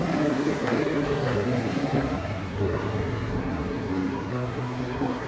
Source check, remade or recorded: remade